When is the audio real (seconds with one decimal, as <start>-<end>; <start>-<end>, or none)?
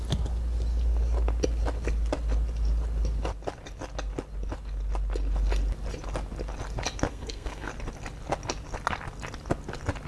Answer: 0.0-7.1; 7.7-10.1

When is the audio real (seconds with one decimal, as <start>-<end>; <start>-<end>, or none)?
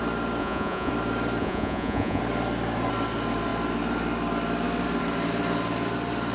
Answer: 0.0-0.4; 0.9-1.4; 2.2-6.3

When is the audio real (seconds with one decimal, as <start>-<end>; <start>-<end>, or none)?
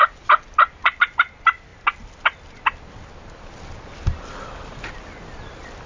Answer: 0.0-5.9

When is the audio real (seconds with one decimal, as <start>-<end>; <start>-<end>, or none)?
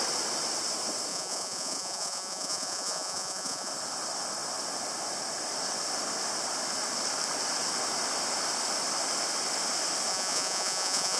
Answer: 0.0-1.1; 3.7-10.1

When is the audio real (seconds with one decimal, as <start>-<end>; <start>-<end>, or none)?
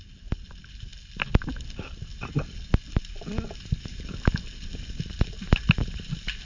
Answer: 0.0-6.5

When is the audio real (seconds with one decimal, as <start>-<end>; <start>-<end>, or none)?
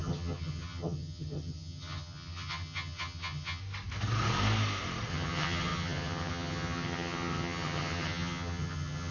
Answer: 3.6-5.1